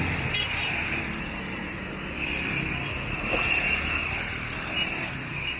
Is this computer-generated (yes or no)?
no